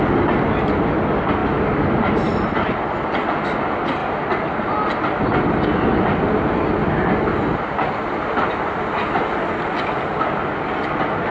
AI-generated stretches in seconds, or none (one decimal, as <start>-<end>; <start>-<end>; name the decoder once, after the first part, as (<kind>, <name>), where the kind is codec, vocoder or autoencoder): none